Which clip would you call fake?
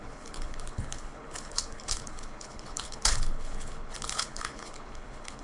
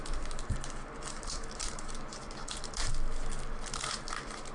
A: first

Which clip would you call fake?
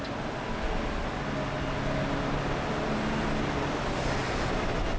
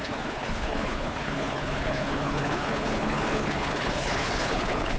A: second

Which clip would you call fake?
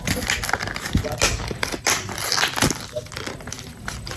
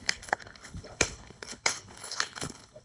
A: second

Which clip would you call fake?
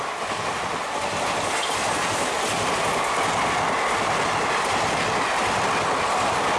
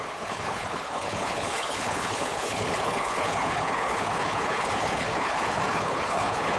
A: second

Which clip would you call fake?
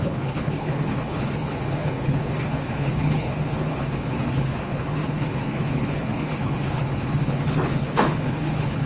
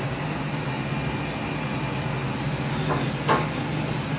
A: first